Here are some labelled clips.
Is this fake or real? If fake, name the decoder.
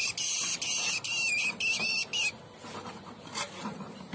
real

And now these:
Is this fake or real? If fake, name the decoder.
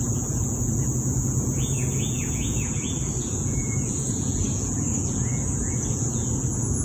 fake, vocoder, Vocos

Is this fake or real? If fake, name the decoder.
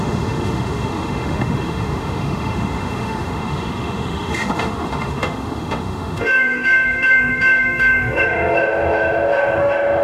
fake, autoencoder, DAC-VAE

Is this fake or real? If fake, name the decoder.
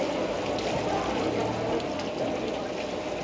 real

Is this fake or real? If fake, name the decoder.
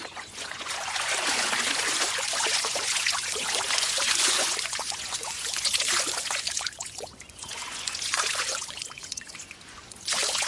fake, vocoder, Vocos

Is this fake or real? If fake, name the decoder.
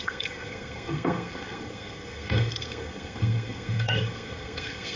fake, codec, SNAC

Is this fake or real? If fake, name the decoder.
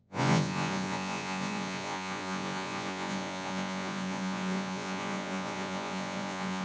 fake, vocoder, Vocos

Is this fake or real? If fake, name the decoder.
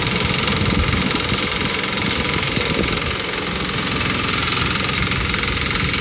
real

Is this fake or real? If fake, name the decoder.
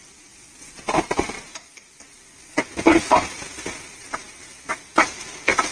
real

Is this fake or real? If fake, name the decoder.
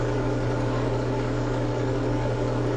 fake, codec, DAC